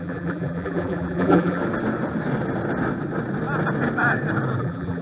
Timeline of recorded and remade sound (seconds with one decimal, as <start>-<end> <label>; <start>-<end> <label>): 0.0-1.6 remade; 1.6-4.6 recorded; 4.6-5.0 remade